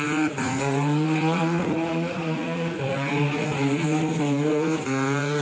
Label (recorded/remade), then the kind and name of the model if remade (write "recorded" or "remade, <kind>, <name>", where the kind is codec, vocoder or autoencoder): remade, vocoder, Vocos